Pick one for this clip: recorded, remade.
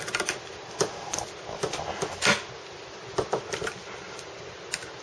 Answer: recorded